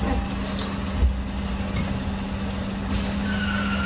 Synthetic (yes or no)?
no